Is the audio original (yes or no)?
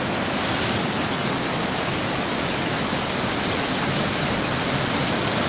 yes